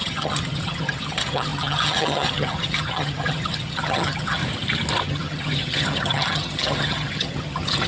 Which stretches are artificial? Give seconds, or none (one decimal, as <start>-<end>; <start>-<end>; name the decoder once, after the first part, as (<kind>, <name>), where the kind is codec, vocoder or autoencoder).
0.0-4.4 (vocoder, HiFi-GAN); 5.0-7.9